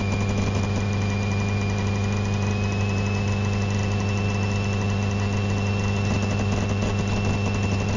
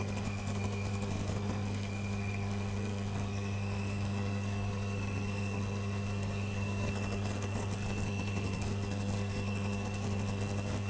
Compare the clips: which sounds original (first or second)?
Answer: first